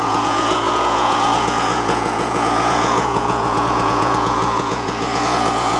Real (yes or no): no